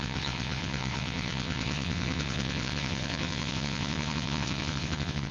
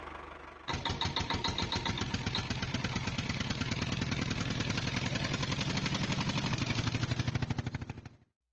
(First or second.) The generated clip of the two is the first